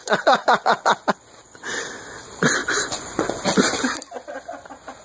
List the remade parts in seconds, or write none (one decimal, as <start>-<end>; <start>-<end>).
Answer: 0.0-0.9; 2.6-3.4